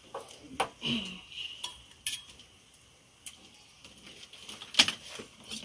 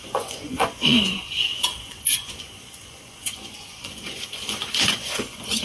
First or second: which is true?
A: first